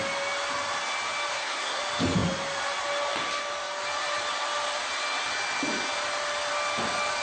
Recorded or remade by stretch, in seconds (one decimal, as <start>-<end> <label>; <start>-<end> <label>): 0.0-1.3 recorded; 1.3-1.8 remade; 1.8-7.2 recorded